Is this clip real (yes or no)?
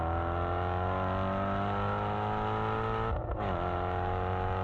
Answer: yes